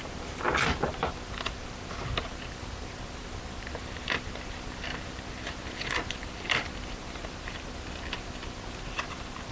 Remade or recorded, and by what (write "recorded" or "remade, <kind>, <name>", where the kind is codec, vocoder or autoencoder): recorded